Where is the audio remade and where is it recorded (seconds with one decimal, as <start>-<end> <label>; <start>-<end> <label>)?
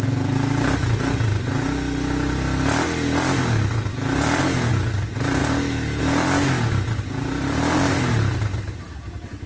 0.0-9.5 recorded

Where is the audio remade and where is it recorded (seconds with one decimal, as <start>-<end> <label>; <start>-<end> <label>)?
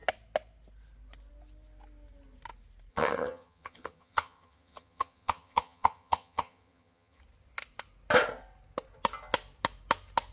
0.0-2.9 recorded; 2.9-7.2 remade; 7.2-10.3 recorded